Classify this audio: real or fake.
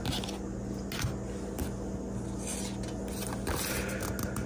real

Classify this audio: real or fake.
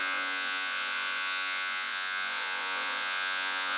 fake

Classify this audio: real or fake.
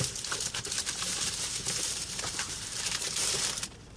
fake